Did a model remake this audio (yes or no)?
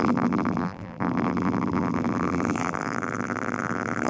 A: yes